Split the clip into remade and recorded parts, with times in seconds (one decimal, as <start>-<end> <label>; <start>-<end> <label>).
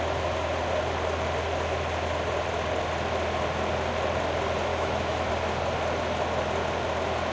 0.0-4.7 recorded; 4.7-5.3 remade; 5.3-7.3 recorded